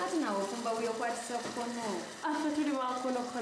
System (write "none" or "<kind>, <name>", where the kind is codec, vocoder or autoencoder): none